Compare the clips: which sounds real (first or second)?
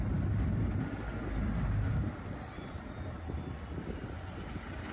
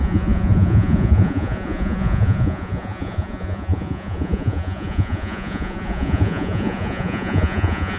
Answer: first